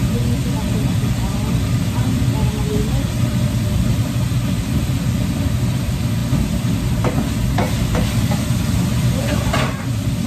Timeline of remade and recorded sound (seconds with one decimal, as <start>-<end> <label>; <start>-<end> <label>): 0.0-10.3 recorded

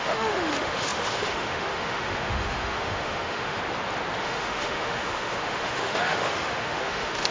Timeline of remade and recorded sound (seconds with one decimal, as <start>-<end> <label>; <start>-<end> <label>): 0.0-3.6 remade; 3.6-4.2 recorded; 4.2-7.3 remade

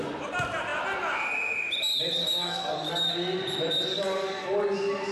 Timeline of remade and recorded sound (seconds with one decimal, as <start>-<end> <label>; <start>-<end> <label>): 0.0-2.2 recorded; 2.2-3.1 remade; 3.1-3.9 recorded; 3.9-4.6 remade; 4.6-5.1 recorded